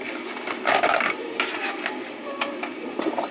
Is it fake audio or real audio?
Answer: fake